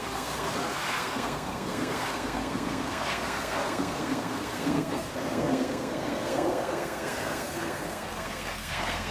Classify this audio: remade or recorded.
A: remade